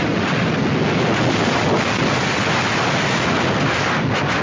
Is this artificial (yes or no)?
no